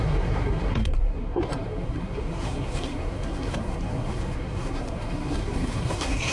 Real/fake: fake